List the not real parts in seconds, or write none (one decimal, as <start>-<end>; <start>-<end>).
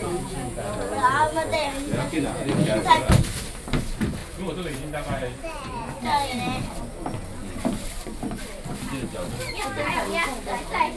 0.0-2.8